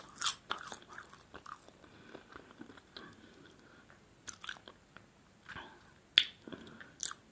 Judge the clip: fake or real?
real